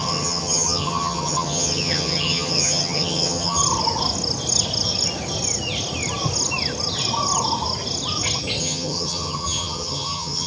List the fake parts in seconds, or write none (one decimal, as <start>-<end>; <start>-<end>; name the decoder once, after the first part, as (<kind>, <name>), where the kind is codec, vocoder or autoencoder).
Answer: 0.0-3.6 (vocoder, HiFi-GAN); 8.6-10.5